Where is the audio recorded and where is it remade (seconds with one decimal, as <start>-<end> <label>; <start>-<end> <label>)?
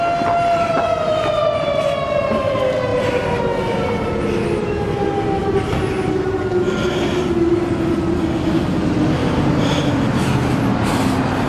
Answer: 0.0-2.9 recorded; 2.9-3.4 remade; 3.4-5.4 recorded; 5.4-6.4 remade; 6.4-9.2 recorded; 9.2-10.1 remade; 10.1-11.5 recorded